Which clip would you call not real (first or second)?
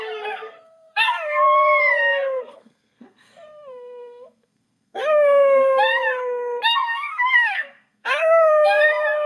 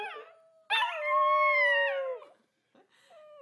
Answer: first